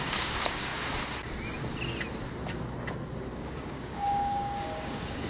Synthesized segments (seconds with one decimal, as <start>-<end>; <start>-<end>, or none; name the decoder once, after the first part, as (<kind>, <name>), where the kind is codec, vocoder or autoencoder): 0.0-0.7 (codec, DAC); 3.3-5.3